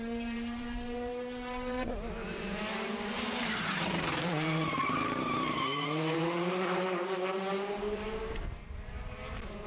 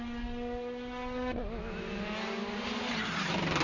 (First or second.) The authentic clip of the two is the second